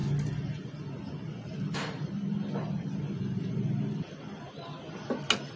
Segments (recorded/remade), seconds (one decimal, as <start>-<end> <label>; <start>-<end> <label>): 0.0-5.6 recorded